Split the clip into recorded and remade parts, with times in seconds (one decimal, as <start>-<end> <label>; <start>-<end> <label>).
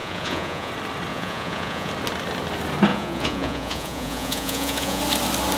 0.0-0.7 remade; 0.7-1.1 recorded; 1.1-1.9 remade; 1.9-2.9 recorded; 2.9-5.0 remade; 5.0-5.6 recorded